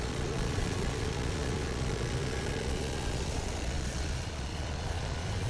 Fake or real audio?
fake